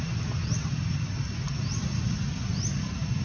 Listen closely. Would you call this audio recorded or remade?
recorded